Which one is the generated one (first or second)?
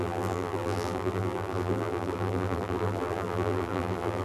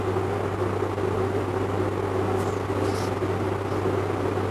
first